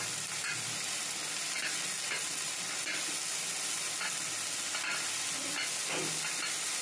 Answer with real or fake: real